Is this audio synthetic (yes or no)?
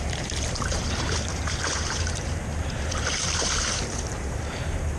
yes